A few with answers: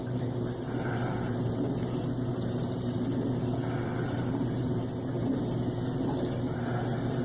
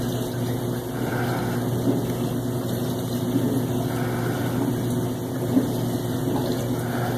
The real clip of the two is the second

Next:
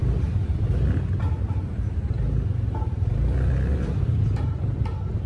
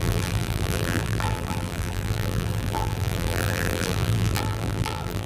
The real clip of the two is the first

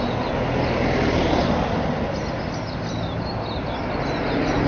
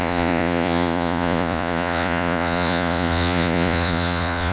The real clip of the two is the first